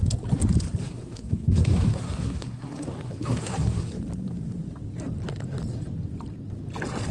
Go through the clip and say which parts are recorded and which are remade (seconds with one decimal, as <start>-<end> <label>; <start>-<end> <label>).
0.0-0.8 recorded; 0.8-3.9 remade; 3.9-7.1 recorded